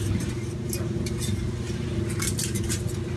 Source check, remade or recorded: recorded